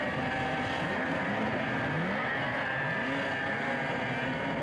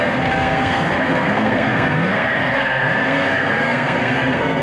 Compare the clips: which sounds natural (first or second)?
first